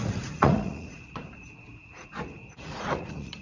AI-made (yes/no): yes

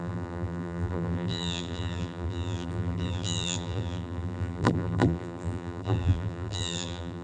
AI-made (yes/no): yes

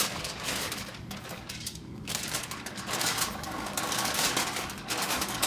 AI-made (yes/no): yes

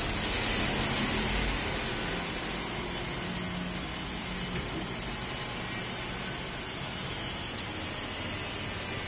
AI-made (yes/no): no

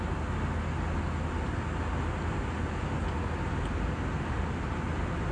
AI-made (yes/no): no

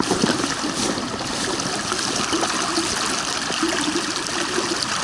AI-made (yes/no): no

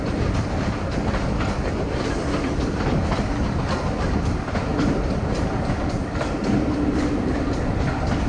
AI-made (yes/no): no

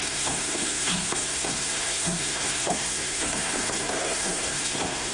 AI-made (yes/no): yes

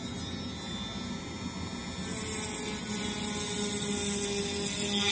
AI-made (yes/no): no